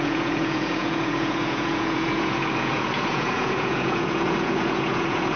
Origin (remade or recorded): remade